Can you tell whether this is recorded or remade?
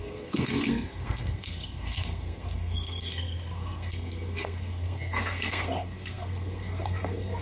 remade